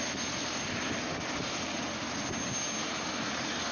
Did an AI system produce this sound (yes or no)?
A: no